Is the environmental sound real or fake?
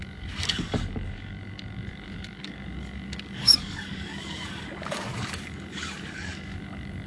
fake